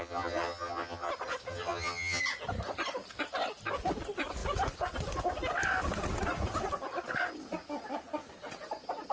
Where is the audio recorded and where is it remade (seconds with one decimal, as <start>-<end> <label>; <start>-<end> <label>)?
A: 0.0-1.1 remade; 1.1-1.5 recorded; 1.5-2.2 remade; 2.2-9.1 recorded